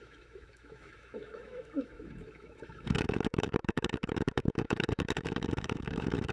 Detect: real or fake fake